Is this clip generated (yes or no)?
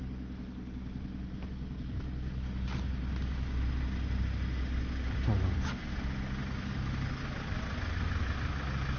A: no